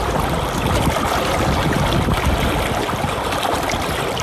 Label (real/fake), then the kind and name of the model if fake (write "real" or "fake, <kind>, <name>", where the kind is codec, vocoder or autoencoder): real